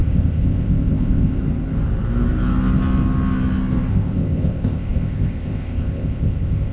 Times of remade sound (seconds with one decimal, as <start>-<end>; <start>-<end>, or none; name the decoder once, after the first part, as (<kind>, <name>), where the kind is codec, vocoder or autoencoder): 0.0-1.4 (codec, ZipCodec); 3.9-6.7